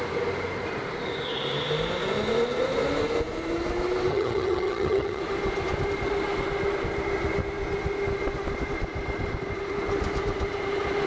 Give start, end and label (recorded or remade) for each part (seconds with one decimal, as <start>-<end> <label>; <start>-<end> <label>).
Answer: 0.0-4.1 recorded; 4.1-5.2 remade; 5.2-11.1 recorded